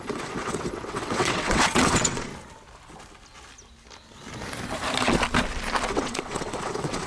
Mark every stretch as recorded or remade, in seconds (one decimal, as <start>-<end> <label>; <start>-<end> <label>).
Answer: 0.0-2.3 remade; 2.3-5.9 recorded; 5.9-7.1 remade